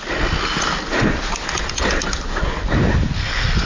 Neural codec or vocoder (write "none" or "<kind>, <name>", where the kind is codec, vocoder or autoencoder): none